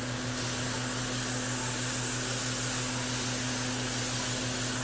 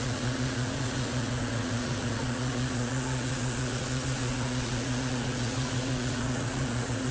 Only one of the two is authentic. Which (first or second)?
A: first